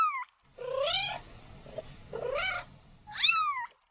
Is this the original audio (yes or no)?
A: yes